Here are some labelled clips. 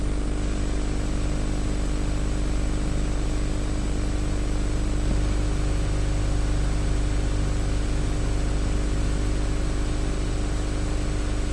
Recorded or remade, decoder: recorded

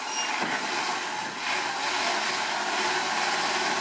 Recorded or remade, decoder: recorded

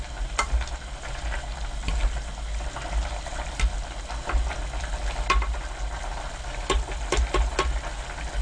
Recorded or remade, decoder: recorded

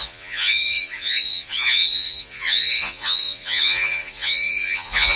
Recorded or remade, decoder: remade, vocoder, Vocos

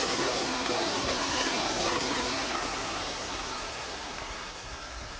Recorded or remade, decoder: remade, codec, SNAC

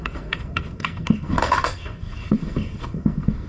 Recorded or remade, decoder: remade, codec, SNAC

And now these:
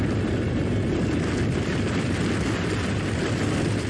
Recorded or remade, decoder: recorded